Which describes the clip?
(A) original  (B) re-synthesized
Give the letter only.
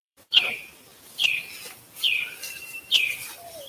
B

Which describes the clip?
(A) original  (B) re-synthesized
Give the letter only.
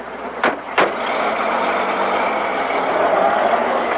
A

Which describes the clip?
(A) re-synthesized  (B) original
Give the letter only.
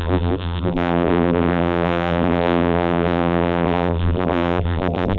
A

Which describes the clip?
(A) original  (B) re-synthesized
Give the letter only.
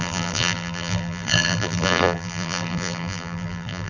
B